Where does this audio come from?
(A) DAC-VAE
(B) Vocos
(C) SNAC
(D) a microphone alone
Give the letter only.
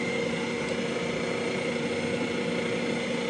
D